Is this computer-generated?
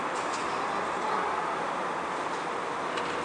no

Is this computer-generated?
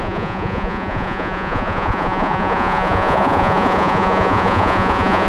yes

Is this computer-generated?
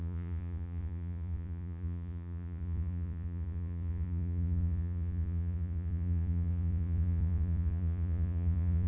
yes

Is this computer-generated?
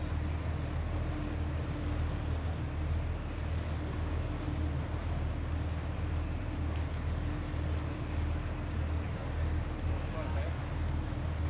no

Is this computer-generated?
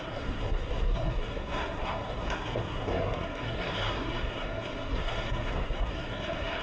yes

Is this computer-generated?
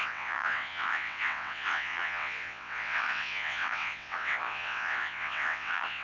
yes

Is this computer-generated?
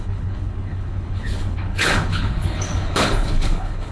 yes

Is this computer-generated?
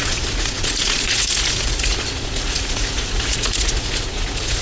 yes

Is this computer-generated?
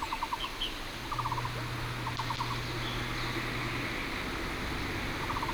no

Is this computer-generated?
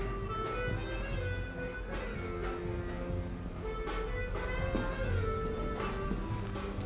no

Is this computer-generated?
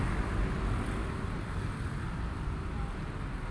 no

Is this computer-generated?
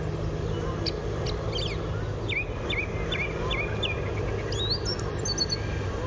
no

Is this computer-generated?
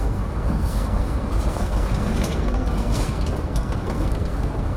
yes